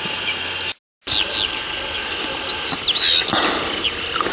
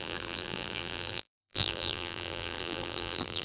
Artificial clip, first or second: second